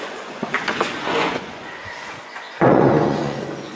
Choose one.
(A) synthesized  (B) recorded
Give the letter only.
A